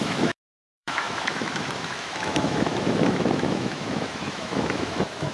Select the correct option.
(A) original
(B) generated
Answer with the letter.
B